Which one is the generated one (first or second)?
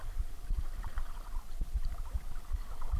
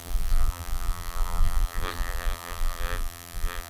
second